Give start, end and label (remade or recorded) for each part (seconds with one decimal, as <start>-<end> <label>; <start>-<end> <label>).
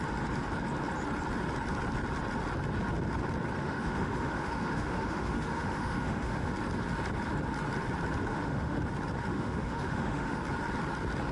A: 0.0-3.6 recorded; 3.6-6.5 remade; 6.5-8.3 recorded; 8.3-8.8 remade; 8.8-9.3 recorded; 9.3-10.4 remade; 10.4-11.3 recorded